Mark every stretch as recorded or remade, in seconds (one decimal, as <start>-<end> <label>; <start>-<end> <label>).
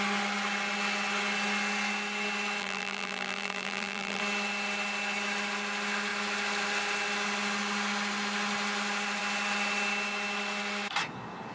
0.0-2.6 recorded; 2.6-4.2 remade; 4.2-11.5 recorded